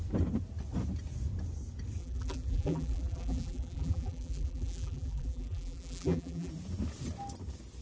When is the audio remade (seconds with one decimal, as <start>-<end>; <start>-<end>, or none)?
2.0-6.5

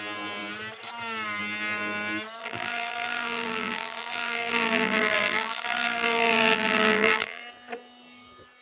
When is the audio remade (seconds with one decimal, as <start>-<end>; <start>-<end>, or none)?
2.4-7.4

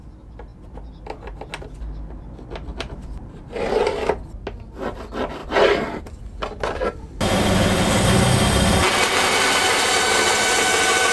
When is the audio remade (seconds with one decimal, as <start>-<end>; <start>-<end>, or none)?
2.7-4.0; 5.4-6.0

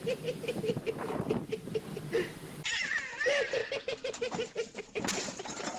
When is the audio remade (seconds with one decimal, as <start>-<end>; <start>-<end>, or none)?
0.0-2.4; 3.0-3.6; 4.8-5.8